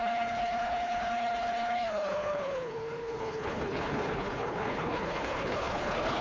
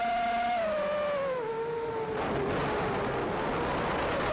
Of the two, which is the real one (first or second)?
second